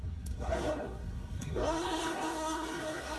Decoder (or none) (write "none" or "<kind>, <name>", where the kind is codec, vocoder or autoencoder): codec, SNAC